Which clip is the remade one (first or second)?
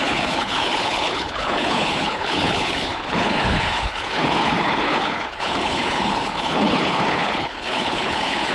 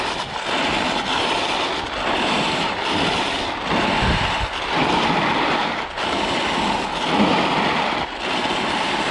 first